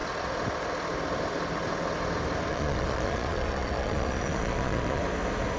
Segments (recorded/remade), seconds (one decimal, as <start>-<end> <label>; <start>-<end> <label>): 0.0-2.5 recorded; 2.5-5.0 remade; 5.0-5.6 recorded